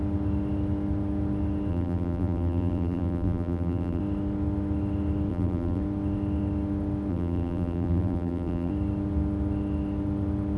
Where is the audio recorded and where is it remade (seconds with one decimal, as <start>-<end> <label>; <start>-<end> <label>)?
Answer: 0.0-1.7 recorded; 1.7-4.0 remade; 4.0-5.3 recorded; 5.3-5.8 remade; 5.8-7.1 recorded; 7.1-8.7 remade; 8.7-10.6 recorded